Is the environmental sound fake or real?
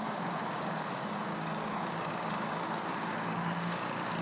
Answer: fake